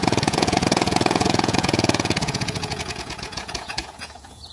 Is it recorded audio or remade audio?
remade